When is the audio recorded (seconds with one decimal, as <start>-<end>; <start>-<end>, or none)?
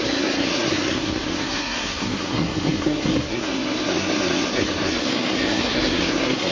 none